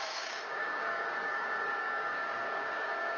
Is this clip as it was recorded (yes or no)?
no